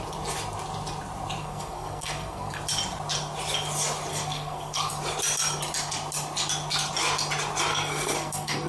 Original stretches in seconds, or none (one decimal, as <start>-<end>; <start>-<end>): 0.0-1.4; 2.6-4.1; 4.9-7.7